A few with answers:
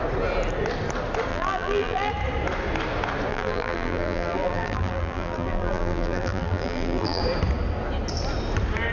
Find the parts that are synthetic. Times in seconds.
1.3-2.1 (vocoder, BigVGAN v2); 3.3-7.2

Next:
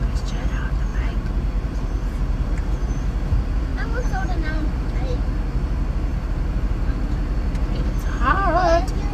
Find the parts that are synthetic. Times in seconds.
0.9-2.7 (vocoder, BigVGAN v2); 3.7-4.8; 6.1-6.9

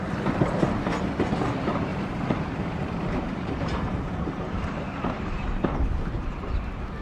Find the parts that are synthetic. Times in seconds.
1.9-5.6 (vocoder, BigVGAN v2)

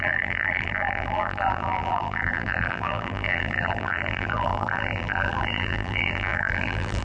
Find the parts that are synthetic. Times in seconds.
0.0-7.0 (vocoder, BigVGAN v2)

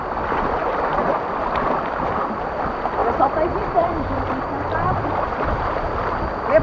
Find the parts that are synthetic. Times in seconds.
3.0-6.0 (vocoder, BigVGAN v2)

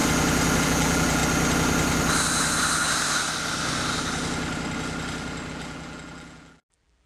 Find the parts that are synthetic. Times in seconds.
0.6-1.2 (vocoder, BigVGAN v2); 5.5-7.1

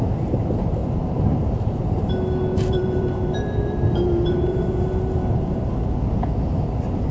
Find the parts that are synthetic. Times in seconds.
0.8-2.1 (vocoder, BigVGAN v2); 2.5-5.7

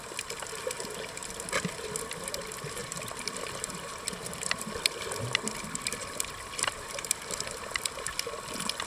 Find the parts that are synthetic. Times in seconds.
2.8-7.9 (vocoder, BigVGAN v2)